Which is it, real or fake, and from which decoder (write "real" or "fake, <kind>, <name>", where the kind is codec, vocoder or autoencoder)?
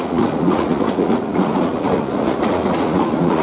fake, vocoder, Vocos